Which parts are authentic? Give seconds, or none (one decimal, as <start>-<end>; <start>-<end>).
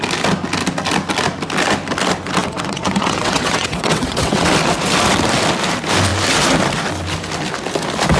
0.0-2.4; 4.5-8.2